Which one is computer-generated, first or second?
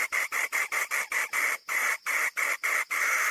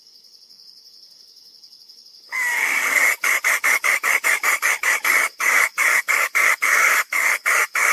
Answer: second